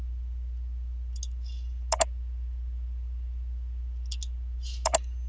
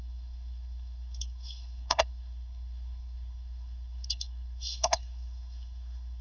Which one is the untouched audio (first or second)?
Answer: first